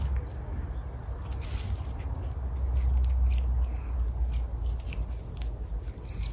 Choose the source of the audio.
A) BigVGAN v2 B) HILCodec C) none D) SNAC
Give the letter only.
C